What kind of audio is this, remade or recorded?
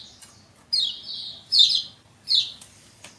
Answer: recorded